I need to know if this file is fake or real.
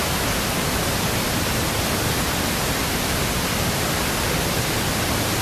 real